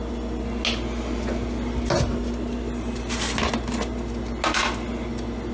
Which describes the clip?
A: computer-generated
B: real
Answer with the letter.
B